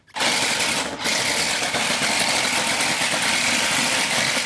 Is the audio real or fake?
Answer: real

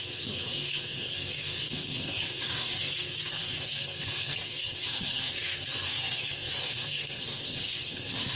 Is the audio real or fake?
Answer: fake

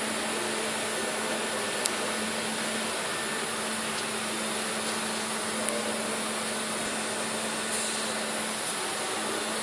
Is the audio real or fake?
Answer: real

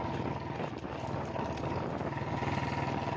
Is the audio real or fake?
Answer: real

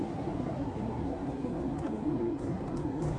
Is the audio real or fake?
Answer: fake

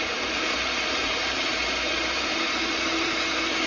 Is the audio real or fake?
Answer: fake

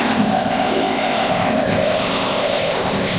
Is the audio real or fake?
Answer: fake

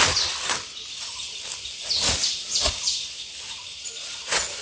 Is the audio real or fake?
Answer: real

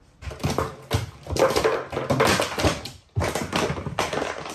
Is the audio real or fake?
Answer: real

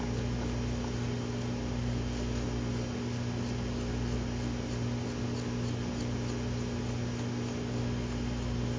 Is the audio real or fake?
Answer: real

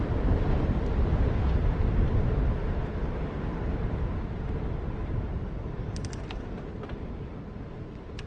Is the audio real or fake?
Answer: real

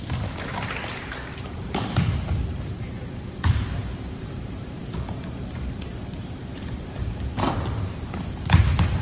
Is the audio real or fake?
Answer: fake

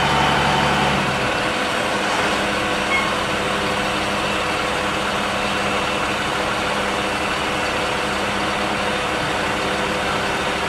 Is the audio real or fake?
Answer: real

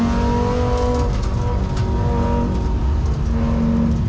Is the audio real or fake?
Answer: real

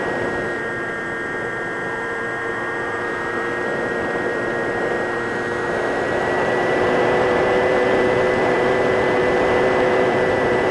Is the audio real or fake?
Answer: fake